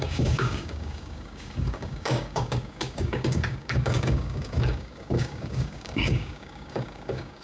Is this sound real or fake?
fake